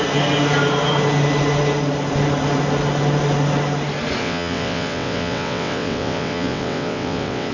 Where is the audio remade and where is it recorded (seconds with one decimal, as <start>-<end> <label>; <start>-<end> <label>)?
0.0-4.2 recorded; 4.2-7.5 remade